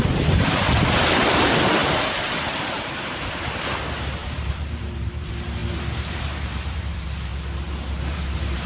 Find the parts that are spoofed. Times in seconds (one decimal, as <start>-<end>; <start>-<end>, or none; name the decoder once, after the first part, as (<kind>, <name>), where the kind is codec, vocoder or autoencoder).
0.0-7.3 (vocoder, BigVGAN v2); 8.0-8.7